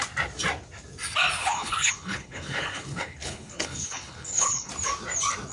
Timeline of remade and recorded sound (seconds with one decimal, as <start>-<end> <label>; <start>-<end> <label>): 0.0-1.4 recorded; 1.4-4.7 remade; 4.7-5.5 recorded